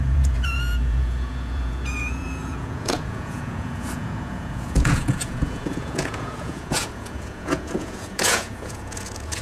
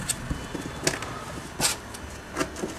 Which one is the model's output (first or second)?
first